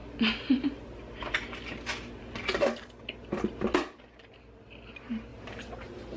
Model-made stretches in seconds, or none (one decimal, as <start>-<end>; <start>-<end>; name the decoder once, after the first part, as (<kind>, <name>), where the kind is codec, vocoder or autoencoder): 5.3-6.2 (vocoder, BigVGAN v2)